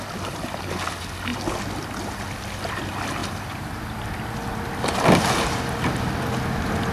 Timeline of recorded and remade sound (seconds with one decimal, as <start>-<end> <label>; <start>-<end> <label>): 0.0-3.2 recorded; 3.2-3.8 remade; 3.8-6.9 recorded